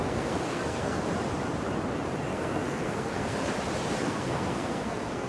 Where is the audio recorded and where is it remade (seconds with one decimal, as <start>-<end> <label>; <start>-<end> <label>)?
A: 0.0-1.0 remade; 1.0-2.3 recorded; 2.3-3.5 remade; 3.5-3.9 recorded; 3.9-5.3 remade